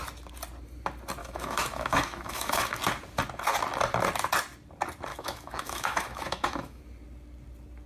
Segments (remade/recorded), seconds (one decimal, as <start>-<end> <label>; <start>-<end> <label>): 0.0-1.2 recorded; 1.2-2.8 remade; 2.8-5.1 recorded; 5.1-6.8 remade; 6.8-7.9 recorded